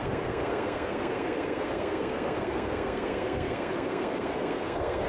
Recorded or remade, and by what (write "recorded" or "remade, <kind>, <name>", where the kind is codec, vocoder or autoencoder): remade, codec, SNAC